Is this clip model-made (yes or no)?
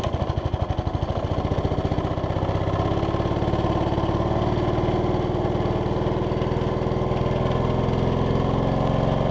no